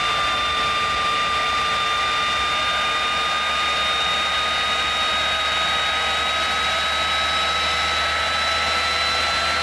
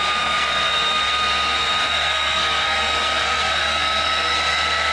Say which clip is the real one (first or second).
first